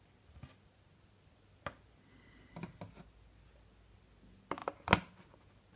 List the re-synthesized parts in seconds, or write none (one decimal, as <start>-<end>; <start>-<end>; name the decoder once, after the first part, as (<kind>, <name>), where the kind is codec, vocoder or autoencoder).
none